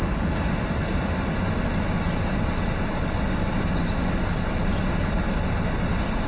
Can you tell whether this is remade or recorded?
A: recorded